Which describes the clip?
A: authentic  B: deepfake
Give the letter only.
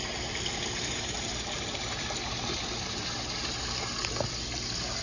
A